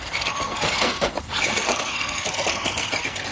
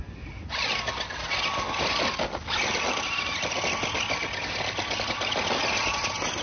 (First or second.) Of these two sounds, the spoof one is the first